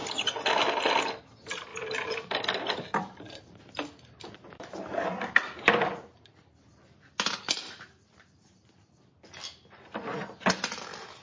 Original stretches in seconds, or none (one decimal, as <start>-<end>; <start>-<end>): 0.0-1.7; 3.6-11.2